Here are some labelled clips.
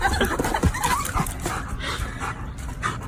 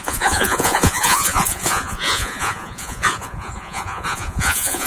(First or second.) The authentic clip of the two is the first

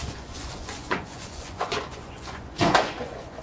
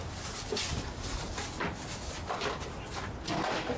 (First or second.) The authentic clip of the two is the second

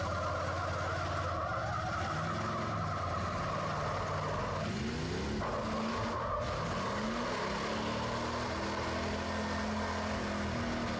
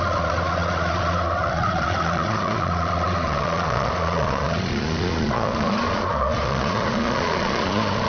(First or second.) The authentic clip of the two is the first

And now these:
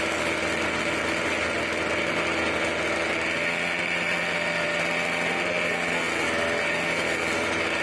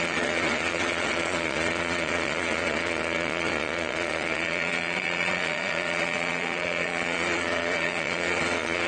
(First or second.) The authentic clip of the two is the first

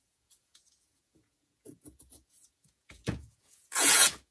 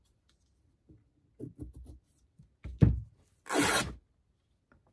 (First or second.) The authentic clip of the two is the second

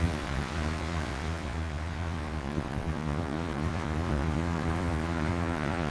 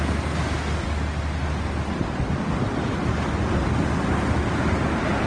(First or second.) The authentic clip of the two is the second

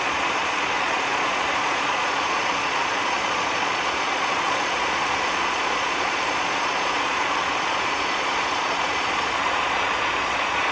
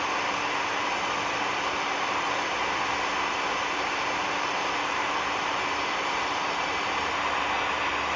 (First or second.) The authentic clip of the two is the second